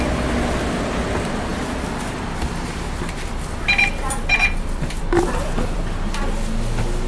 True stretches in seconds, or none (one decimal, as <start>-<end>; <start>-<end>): 0.0-1.5; 5.8-7.1